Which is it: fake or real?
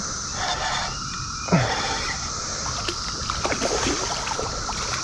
real